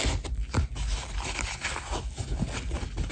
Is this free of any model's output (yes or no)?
yes